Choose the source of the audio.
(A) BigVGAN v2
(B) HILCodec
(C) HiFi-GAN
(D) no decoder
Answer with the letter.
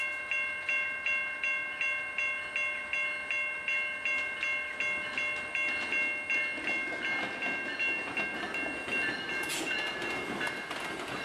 D